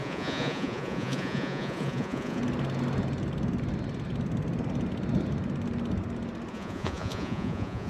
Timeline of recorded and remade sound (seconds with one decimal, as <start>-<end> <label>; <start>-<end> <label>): 0.0-2.4 remade; 2.4-6.5 recorded; 6.5-7.9 remade